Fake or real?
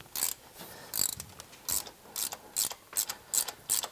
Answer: real